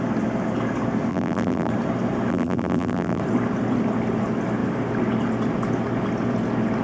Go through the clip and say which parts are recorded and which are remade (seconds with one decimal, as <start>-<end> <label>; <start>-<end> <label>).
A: 0.0-1.1 recorded; 1.1-1.7 remade; 1.7-2.3 recorded; 2.3-3.2 remade; 3.2-6.8 recorded